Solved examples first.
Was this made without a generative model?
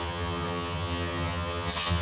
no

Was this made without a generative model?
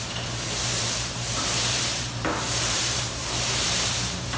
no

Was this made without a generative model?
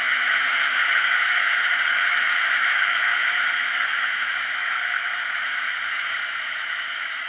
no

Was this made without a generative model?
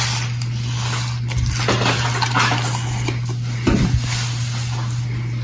yes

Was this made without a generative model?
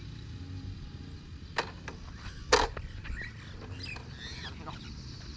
yes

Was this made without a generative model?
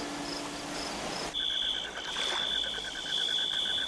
yes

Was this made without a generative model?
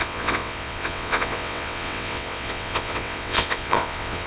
no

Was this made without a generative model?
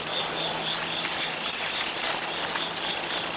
yes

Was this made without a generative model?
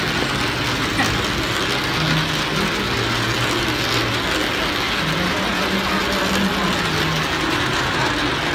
yes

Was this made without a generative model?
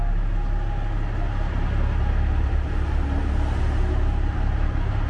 yes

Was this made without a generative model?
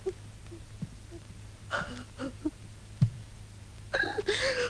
yes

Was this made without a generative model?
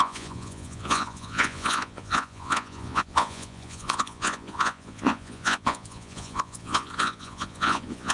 no